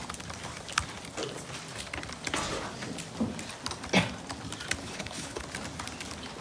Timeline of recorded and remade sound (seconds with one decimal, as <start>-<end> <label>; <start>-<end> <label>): 0.0-4.8 recorded; 4.8-5.4 remade; 5.4-6.4 recorded